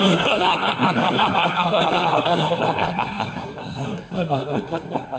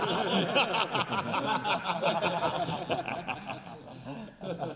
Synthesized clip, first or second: first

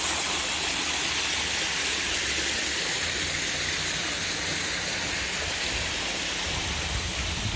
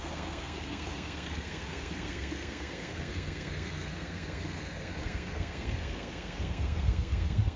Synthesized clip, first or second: second